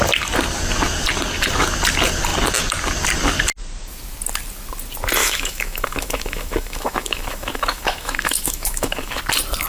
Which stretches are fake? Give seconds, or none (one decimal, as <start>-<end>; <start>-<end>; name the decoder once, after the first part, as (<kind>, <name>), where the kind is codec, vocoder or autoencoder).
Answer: 5.2-9.2 (autoencoder, DAC-VAE)